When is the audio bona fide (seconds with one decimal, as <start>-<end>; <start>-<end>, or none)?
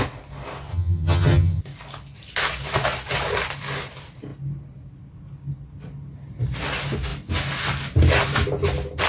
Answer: 0.0-0.7; 1.6-9.1